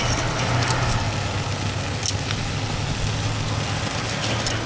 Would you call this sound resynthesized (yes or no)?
no